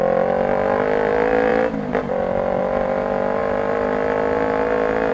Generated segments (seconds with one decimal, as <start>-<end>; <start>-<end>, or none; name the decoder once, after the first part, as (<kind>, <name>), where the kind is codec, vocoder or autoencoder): none